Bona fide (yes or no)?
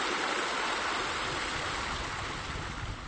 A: yes